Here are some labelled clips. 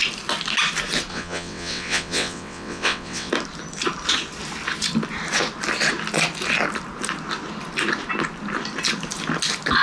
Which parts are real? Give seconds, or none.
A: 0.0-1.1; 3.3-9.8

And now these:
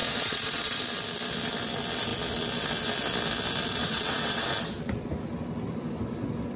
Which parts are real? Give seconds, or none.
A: 0.8-3.8; 4.5-6.6

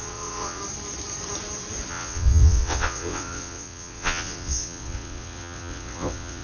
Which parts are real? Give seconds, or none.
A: 0.6-1.9

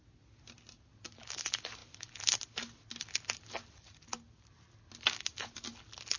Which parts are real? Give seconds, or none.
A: 0.0-6.2

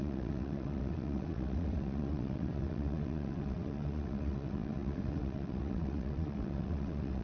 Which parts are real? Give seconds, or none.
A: none

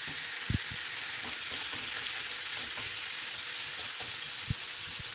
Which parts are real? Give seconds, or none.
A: 0.0-3.7